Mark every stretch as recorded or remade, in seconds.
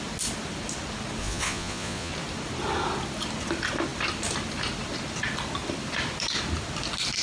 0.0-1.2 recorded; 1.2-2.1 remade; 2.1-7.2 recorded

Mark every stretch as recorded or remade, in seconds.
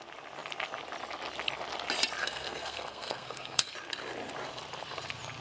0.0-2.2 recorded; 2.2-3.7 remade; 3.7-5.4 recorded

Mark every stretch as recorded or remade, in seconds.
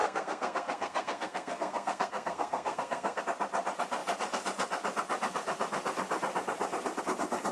0.0-3.2 remade; 3.2-7.5 recorded